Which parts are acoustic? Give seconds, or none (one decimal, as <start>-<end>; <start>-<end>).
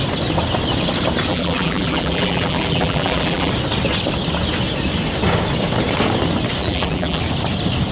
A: 0.0-1.3; 3.5-6.6; 7.2-7.9